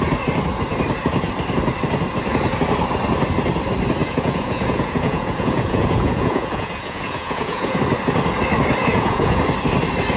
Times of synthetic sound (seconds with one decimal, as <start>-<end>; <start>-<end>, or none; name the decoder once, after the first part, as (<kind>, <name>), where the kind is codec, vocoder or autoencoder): 4.0-7.8 (vocoder, Vocos); 8.8-9.4